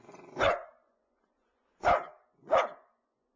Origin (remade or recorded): remade